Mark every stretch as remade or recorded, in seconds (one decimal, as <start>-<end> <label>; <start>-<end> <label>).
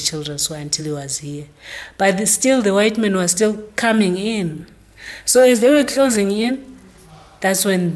0.0-4.6 recorded; 4.6-6.5 remade; 6.5-8.0 recorded